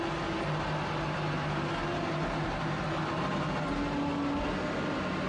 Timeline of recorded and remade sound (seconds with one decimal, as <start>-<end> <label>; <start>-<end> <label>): 0.0-1.8 recorded; 1.8-2.7 remade; 2.7-5.3 recorded